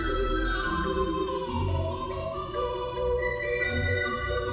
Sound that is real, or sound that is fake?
fake